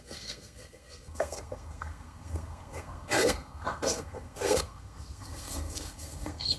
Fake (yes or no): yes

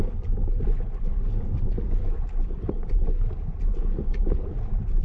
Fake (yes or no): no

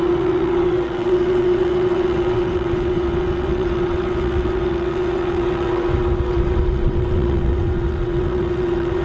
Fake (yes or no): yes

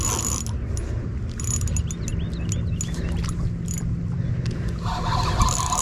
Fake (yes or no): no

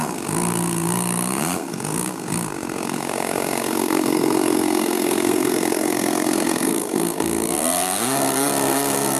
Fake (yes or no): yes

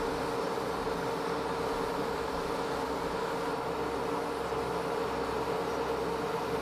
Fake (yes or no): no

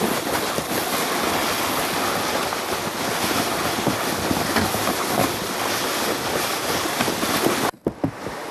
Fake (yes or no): no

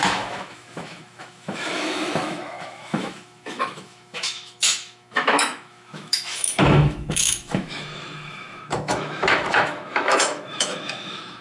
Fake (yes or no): yes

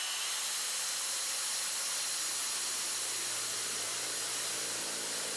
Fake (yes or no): no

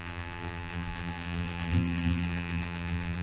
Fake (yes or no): yes